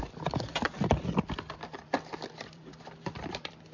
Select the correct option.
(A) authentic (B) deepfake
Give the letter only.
B